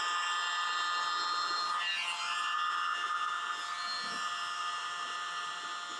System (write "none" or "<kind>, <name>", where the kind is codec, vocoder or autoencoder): none